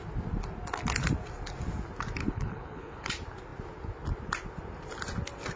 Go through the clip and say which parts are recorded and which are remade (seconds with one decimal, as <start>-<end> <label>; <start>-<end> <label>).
0.0-2.2 recorded; 2.2-3.1 remade; 3.1-5.6 recorded